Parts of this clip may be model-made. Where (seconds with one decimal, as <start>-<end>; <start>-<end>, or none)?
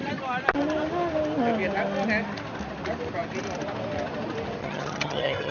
4.6-5.5